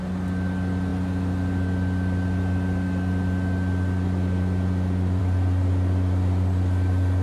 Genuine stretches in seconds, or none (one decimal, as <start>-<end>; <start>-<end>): 0.0-7.2